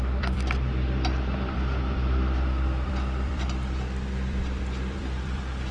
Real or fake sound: fake